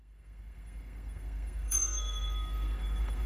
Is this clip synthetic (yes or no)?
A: yes